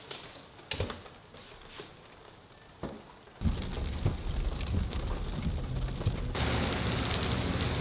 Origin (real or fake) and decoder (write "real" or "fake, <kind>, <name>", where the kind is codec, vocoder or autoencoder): real